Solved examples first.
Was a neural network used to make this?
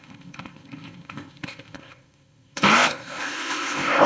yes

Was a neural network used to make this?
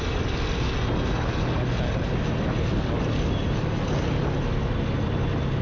no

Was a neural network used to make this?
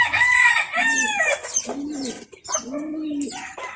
no